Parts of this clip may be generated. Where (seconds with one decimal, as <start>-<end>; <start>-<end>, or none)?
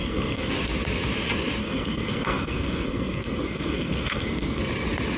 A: 0.0-0.5; 1.6-4.6